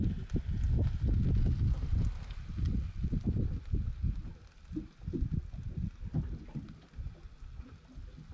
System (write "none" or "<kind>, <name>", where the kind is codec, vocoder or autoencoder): none